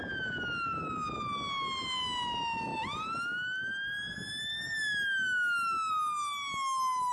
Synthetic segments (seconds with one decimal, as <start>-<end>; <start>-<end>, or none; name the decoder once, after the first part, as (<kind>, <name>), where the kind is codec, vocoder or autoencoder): none

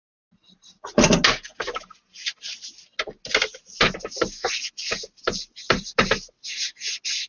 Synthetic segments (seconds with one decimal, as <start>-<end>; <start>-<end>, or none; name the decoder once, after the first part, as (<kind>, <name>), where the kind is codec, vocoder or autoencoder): none

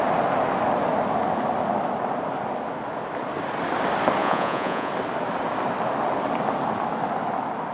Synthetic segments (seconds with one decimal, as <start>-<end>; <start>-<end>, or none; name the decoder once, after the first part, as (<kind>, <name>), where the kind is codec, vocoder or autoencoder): 4.2-4.9 (vocoder, Vocos)